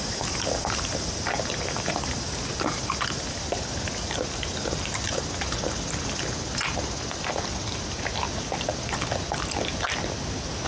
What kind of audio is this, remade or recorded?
recorded